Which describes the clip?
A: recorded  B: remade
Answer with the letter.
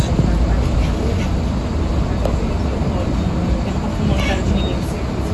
A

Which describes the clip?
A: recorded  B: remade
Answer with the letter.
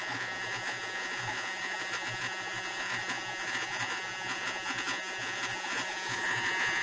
B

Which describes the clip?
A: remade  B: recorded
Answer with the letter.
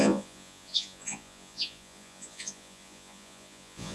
A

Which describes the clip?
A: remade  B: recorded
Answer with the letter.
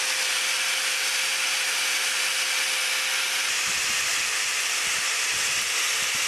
B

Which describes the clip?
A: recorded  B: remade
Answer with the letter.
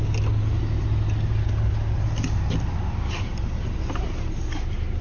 A